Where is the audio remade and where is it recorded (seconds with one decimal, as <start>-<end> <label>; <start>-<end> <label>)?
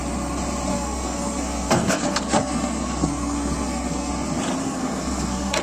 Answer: 0.0-0.7 recorded; 0.7-4.1 remade; 4.1-4.6 recorded; 4.6-5.6 remade